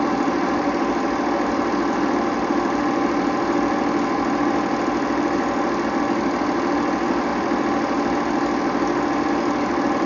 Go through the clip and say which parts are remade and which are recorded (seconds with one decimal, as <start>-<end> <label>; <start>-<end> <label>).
0.0-10.1 recorded